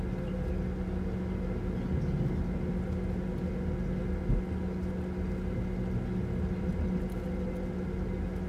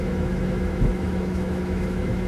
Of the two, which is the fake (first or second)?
second